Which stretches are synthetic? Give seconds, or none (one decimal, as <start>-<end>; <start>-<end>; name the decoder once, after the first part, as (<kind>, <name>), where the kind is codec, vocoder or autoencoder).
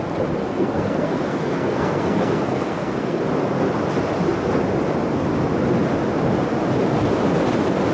0.4-3.2 (codec, SNAC)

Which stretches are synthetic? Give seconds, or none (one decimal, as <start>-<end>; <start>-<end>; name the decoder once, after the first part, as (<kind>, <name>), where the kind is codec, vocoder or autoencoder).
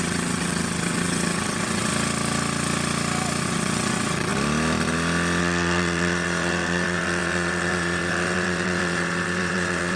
0.0-1.9 (vocoder, WaveNeXt); 3.4-4.3; 5.4-10.0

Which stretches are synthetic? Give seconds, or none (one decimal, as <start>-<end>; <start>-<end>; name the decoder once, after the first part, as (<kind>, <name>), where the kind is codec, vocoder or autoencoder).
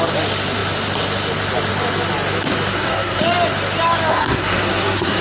2.7-3.2 (codec, SNAC); 4.1-5.2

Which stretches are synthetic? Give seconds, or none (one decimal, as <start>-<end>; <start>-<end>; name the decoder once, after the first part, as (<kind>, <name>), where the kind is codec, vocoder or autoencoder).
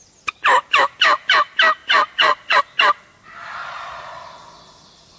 1.8-2.6 (vocoder, Vocos); 3.6-4.2